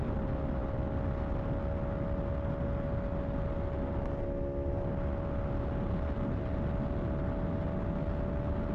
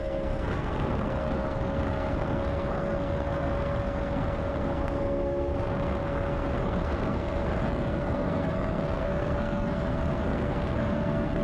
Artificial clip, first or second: second